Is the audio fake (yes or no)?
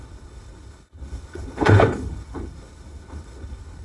yes